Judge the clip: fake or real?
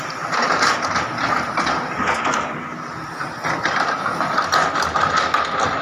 fake